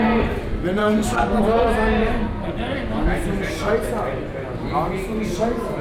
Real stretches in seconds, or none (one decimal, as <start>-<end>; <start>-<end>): 0.0-0.8; 1.4-5.8